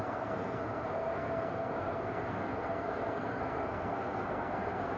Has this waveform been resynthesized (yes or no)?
yes